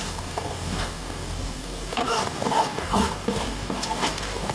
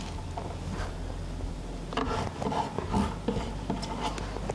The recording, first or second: second